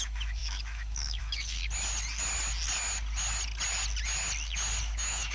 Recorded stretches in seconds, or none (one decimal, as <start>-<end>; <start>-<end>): 1.6-4.8